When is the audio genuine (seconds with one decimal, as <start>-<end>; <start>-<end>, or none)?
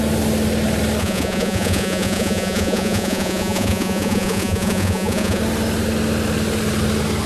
0.0-1.0; 5.4-7.3